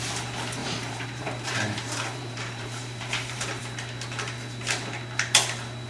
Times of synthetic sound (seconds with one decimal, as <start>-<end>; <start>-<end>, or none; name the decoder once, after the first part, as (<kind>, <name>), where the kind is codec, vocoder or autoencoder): 0.6-3.6 (vocoder, BigVGAN v2)

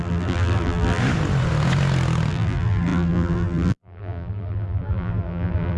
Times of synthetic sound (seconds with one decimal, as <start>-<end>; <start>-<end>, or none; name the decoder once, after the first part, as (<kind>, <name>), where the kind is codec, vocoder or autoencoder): 0.0-1.0 (vocoder, BigVGAN v2); 2.3-5.8

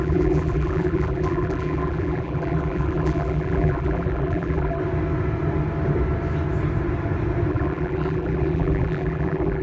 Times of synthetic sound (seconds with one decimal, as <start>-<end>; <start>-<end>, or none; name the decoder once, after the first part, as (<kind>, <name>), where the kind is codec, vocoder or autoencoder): 0.0-4.8 (vocoder, BigVGAN v2); 7.5-9.6

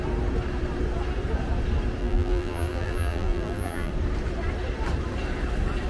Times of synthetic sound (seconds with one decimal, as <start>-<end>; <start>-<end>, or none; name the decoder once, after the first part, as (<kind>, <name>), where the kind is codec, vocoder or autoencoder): 2.0-3.9 (vocoder, BigVGAN v2)